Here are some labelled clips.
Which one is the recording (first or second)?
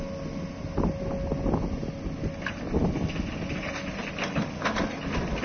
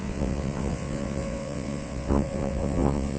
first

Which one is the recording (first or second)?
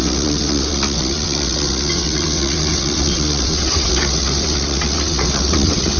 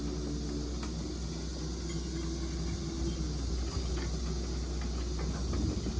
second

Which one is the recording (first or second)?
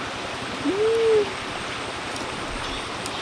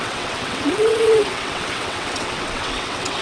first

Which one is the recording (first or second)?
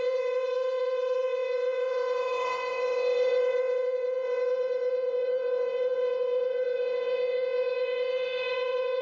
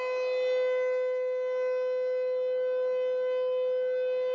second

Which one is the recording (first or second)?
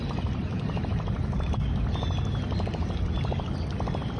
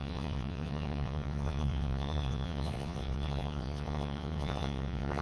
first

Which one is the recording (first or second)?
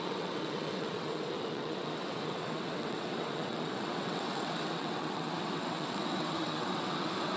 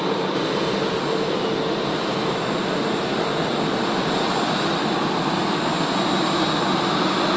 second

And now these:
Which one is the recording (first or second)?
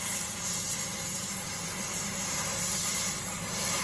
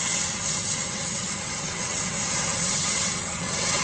first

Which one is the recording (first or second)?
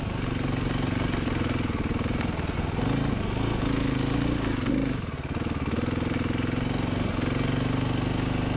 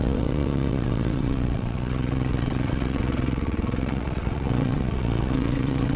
first